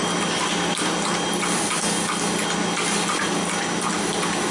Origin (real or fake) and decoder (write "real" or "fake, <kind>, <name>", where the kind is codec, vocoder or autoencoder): real